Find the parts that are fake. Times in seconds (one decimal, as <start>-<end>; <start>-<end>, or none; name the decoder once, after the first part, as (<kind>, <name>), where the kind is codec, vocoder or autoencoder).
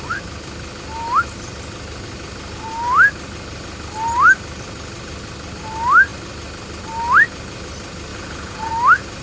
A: 8.1-8.7 (vocoder, Vocos)